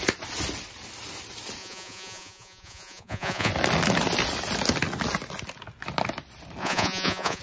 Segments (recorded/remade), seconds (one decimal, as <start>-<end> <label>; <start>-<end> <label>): 0.0-1.6 recorded; 1.6-3.5 remade; 3.5-6.6 recorded; 6.6-7.4 remade

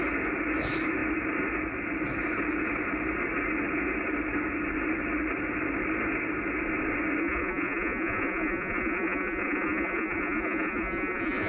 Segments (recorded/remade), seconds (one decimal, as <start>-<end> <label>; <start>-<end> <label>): 0.0-7.2 recorded; 7.2-11.5 remade

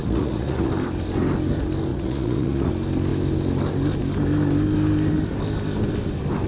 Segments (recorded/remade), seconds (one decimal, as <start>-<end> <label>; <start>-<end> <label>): 0.0-0.7 remade; 0.7-1.9 recorded; 1.9-2.7 remade; 2.7-6.5 recorded

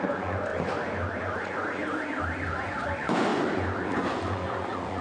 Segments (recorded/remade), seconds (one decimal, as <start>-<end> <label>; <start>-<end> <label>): 0.0-0.5 remade; 0.5-1.2 recorded; 1.2-1.8 remade; 1.8-2.5 recorded; 2.5-5.0 remade

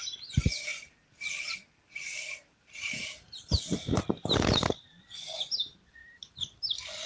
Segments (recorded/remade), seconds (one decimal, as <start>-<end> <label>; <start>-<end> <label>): 0.0-7.1 recorded

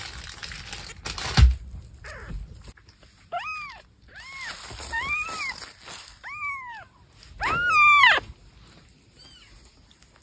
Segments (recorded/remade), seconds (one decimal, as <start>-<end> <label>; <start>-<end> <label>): 0.0-10.2 recorded

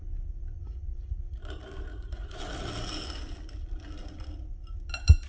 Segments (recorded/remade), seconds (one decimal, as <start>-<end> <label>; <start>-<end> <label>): 0.0-1.9 recorded; 1.9-2.4 remade; 2.4-5.3 recorded